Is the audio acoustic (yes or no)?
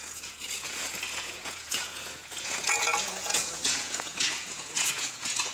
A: no